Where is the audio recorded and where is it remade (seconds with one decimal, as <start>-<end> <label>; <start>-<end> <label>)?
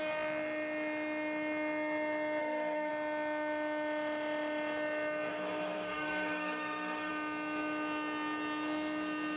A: 0.0-2.4 recorded; 2.4-2.9 remade; 2.9-5.3 recorded; 5.3-7.1 remade; 7.1-9.4 recorded